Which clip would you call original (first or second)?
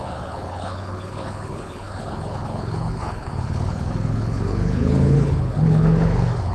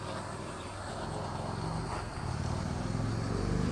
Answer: second